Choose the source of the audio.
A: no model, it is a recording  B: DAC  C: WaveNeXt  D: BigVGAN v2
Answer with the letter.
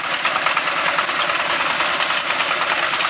A